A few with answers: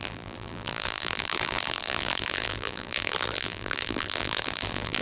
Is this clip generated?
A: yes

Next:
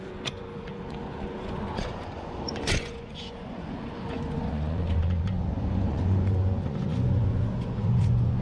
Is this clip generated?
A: yes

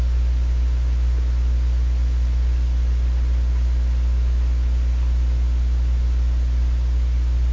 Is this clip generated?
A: no